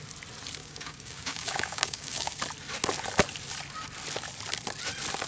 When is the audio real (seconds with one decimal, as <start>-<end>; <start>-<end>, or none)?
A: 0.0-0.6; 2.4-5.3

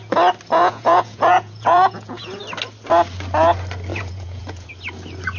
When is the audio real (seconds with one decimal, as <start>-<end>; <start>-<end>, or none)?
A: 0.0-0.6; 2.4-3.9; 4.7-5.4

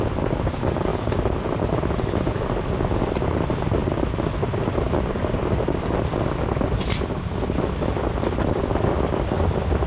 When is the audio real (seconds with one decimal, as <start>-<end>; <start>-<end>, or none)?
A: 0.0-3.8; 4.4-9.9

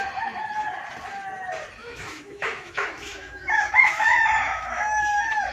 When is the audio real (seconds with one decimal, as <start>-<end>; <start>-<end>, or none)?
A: 0.0-1.8; 5.1-5.5

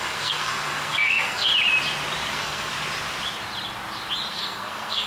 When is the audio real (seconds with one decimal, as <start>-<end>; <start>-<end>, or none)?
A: 1.5-2.3; 2.7-4.3

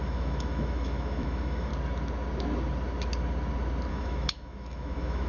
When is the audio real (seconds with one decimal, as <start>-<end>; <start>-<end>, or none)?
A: 1.7-3.9

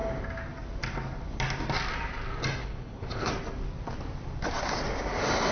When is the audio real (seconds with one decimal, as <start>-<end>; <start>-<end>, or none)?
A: 0.0-2.6; 3.3-5.5